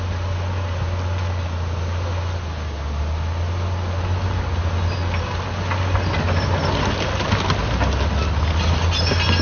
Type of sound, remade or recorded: recorded